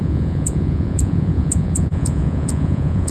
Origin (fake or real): fake